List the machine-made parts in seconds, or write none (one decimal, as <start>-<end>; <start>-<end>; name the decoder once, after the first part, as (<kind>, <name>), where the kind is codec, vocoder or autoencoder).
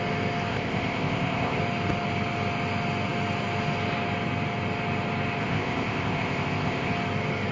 0.5-1.6 (codec, ZipCodec); 5.4-6.9